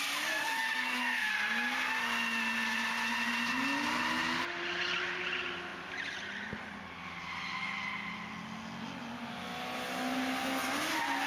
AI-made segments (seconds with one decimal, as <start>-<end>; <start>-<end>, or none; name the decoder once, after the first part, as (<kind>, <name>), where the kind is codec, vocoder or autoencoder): 0.4-1.3 (codec, SNAC)